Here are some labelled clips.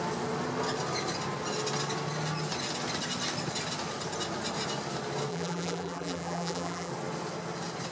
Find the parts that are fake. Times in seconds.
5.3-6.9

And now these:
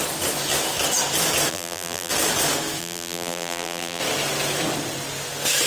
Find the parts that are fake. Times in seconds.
1.5-2.1; 2.8-4.0

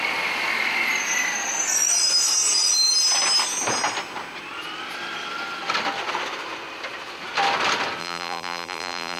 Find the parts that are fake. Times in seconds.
8.0-9.2